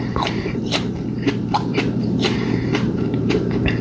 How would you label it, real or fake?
fake